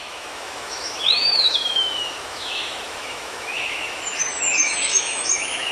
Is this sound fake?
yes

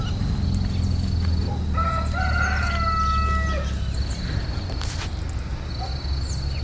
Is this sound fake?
no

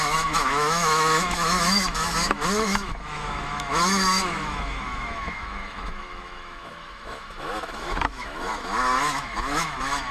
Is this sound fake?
yes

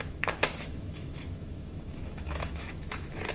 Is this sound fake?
yes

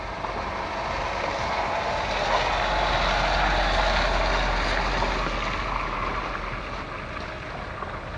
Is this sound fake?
no